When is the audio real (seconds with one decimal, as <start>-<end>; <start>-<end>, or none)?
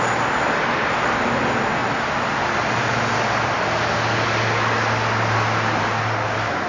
0.0-6.7